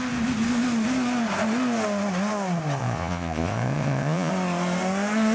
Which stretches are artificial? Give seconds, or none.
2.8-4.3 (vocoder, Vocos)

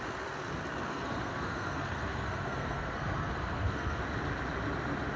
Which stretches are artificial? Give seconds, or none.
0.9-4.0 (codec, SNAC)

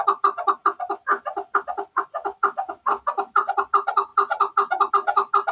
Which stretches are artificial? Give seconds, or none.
none

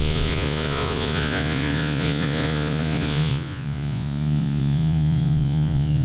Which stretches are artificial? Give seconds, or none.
0.0-6.0 (vocoder, Vocos)